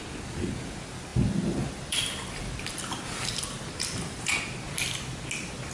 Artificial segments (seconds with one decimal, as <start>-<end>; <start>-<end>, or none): 1.1-4.4